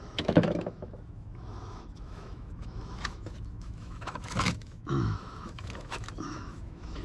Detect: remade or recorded remade